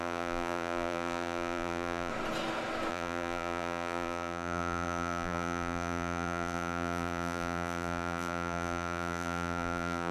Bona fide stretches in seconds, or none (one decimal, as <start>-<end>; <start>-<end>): 2.1-2.9